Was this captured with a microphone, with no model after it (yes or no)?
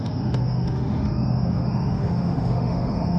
no